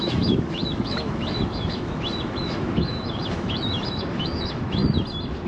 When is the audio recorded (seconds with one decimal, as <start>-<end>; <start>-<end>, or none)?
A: 4.8-5.5